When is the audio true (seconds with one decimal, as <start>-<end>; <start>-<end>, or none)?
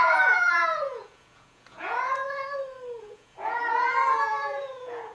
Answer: 2.2-3.0